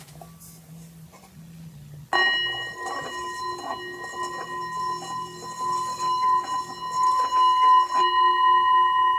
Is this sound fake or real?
real